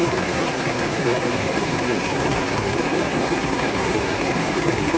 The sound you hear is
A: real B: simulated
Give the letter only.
B